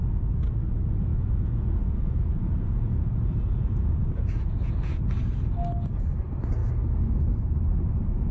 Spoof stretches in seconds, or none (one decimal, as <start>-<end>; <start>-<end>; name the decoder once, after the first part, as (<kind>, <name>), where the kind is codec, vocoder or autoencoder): 1.1-5.1 (vocoder, Vocos)